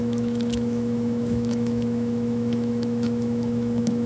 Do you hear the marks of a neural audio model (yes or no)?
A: yes